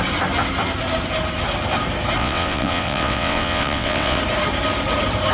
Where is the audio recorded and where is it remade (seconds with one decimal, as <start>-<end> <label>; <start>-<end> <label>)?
0.0-2.2 recorded; 2.2-4.2 remade; 4.2-5.3 recorded